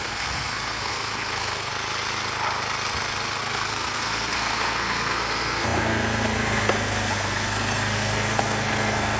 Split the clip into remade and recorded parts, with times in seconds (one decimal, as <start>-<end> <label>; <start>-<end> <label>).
0.0-1.7 remade; 1.7-3.4 recorded; 3.4-9.2 remade